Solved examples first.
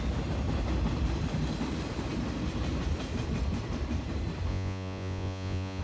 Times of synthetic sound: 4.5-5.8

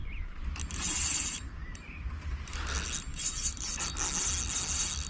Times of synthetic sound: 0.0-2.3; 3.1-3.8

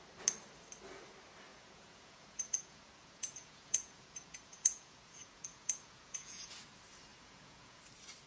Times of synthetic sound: 1.5-6.5; 7.1-7.8

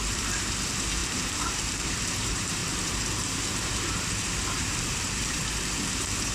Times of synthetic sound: 0.0-6.3